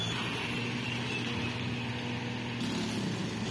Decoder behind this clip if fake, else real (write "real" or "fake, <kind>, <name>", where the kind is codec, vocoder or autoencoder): real